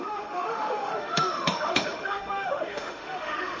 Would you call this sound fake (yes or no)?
yes